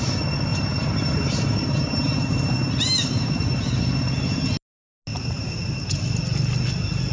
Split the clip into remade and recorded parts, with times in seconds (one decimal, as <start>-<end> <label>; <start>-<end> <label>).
0.0-0.5 recorded; 0.5-3.8 remade; 3.8-5.1 recorded; 5.1-6.0 remade; 6.0-7.1 recorded